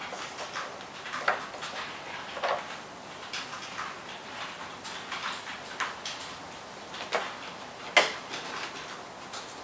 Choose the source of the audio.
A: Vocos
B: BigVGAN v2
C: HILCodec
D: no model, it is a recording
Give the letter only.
D